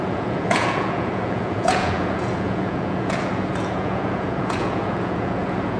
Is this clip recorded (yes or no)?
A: no